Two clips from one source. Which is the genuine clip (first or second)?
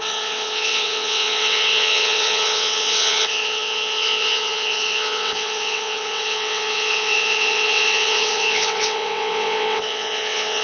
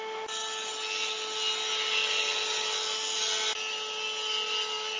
second